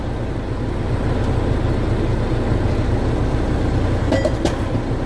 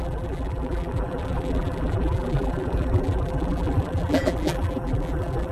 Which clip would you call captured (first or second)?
first